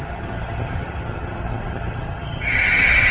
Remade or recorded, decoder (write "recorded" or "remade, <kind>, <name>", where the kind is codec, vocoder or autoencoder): remade, vocoder, HiFi-GAN